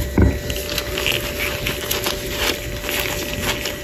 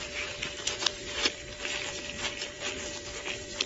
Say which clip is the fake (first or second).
second